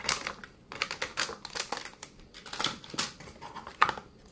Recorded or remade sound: recorded